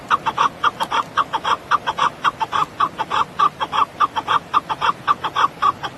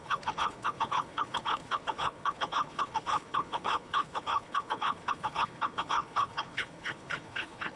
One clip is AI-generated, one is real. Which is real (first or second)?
first